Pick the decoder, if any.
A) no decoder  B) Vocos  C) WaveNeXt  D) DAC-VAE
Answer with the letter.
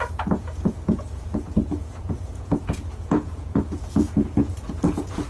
B